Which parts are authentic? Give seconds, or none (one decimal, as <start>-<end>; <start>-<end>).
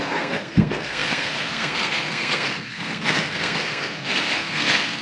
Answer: none